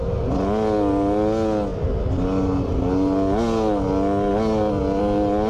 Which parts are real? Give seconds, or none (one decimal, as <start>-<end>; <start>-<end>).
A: 0.0-5.5